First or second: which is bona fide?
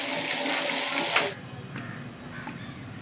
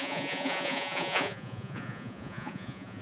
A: first